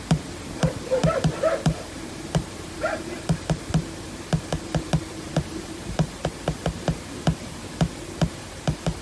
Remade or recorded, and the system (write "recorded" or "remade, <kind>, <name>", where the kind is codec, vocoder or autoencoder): remade, vocoder, BigVGAN v2